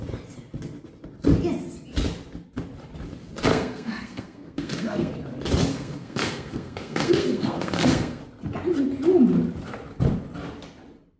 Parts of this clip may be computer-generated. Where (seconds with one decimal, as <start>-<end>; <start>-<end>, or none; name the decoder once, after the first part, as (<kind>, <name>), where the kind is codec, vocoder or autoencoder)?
3.5-5.1 (codec, SNAC); 5.7-8.2